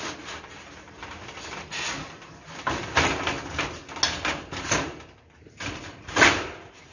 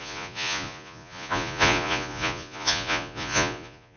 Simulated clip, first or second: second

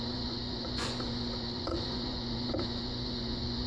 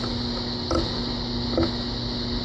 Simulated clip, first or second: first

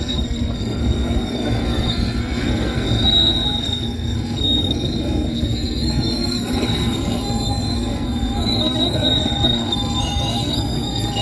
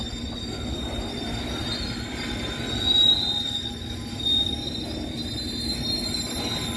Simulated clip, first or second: first